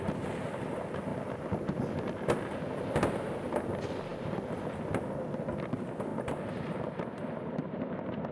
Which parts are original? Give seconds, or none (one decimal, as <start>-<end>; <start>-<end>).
0.0-8.3